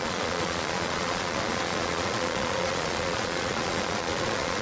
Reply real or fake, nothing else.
fake